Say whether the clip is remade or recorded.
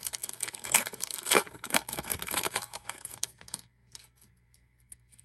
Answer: remade